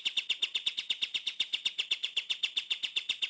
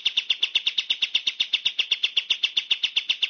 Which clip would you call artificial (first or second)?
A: first